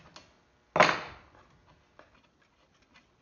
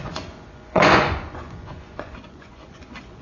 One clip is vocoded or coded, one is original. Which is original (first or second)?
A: first